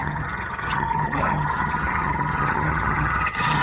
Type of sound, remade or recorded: remade